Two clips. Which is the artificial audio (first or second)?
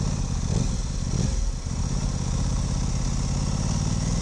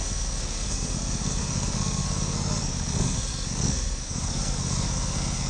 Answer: second